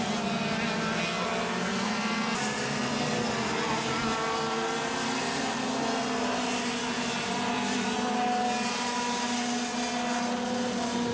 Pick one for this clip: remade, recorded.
recorded